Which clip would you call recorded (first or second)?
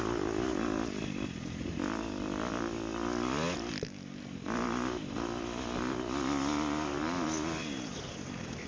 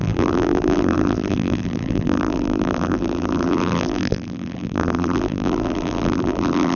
first